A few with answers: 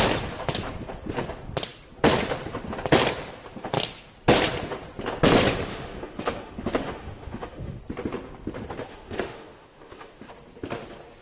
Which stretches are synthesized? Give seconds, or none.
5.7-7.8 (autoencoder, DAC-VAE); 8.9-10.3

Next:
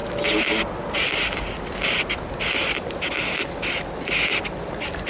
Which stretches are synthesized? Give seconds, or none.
none